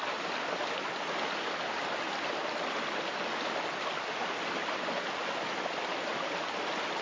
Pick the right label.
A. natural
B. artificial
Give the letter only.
A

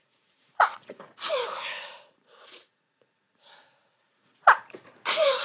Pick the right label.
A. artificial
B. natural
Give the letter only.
A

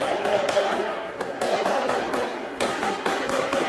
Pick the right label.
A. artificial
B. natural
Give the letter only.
A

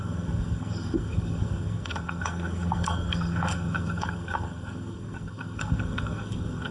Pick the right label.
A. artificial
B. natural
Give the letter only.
A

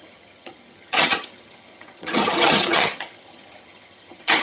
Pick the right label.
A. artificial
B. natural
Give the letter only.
A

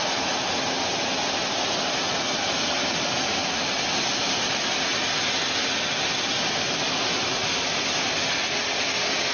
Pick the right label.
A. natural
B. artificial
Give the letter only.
A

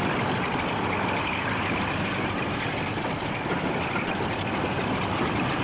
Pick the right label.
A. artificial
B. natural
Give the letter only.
A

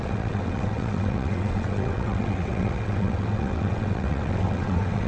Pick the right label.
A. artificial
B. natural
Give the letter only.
A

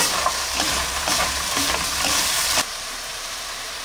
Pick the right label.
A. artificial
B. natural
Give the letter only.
A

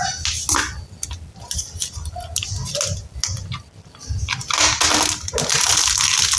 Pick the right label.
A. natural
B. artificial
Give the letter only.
A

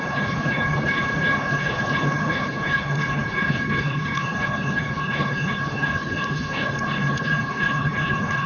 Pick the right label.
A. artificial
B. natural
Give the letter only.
A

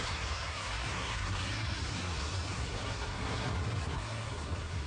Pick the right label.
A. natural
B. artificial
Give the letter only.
B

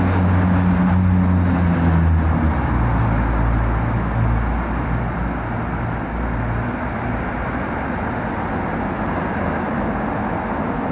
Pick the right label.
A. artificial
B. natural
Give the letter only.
B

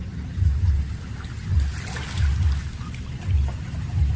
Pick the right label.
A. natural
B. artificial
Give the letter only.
A